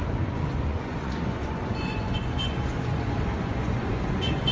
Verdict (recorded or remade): remade